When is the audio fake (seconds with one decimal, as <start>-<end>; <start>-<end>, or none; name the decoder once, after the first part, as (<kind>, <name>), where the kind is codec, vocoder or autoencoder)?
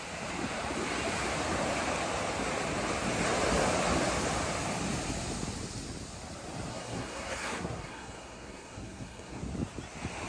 6.7-9.4 (codec, SNAC)